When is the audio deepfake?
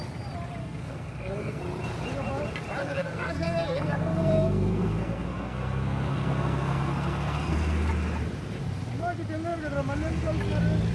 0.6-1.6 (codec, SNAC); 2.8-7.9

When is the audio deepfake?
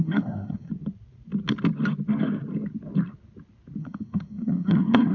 0.0-0.7 (codec, SNAC); 3.8-5.1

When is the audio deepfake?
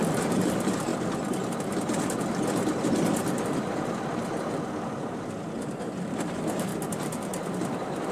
0.0-0.9 (vocoder, BigVGAN v2); 5.8-6.7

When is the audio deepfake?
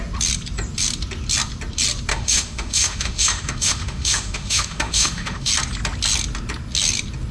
2.1-5.5 (autoencoder, DAC-VAE)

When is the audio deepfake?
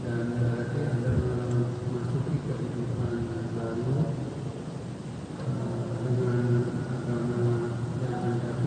none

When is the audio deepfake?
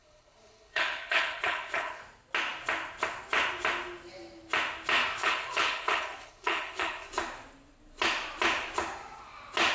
0.0-2.0 (codec, HILCodec); 5.2-7.1